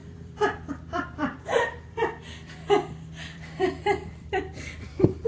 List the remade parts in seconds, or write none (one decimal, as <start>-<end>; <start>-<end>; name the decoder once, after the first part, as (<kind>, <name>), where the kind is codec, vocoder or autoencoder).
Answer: 0.0-5.3 (vocoder, BigVGAN v2)